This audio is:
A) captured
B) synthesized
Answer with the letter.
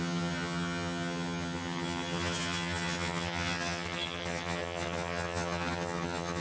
B